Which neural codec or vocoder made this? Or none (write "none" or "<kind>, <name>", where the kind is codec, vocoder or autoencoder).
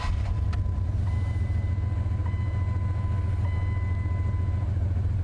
none